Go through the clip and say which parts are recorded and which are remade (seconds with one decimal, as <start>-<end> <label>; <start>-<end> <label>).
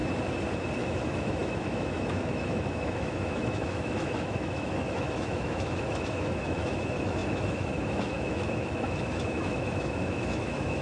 0.0-0.8 recorded; 0.8-10.8 remade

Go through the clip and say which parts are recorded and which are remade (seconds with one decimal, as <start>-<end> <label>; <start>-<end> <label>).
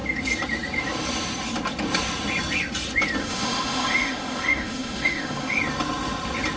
0.0-3.2 recorded; 3.2-5.6 remade; 5.6-6.6 recorded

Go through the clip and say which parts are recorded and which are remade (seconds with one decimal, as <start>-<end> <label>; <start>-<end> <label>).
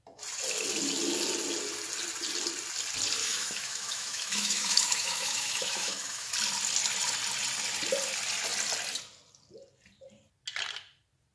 0.0-3.2 recorded; 3.2-6.3 remade; 6.3-11.3 recorded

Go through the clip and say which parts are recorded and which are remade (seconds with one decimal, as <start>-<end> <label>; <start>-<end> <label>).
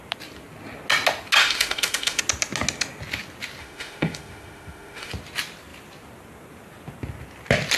0.0-1.4 recorded; 1.4-2.2 remade; 2.2-3.6 recorded; 3.6-5.1 remade; 5.1-7.8 recorded